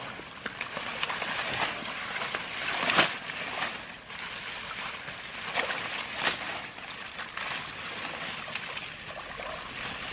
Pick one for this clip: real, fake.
real